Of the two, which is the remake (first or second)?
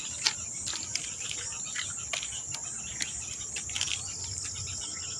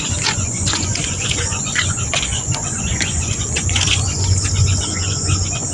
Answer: second